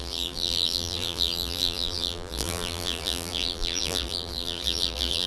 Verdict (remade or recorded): remade